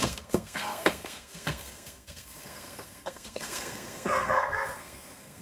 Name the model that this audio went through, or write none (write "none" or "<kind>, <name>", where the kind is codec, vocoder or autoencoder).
codec, SNAC